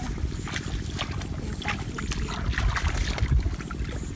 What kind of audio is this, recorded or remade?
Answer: recorded